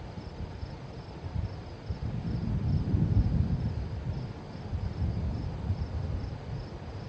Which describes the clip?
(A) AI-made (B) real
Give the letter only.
B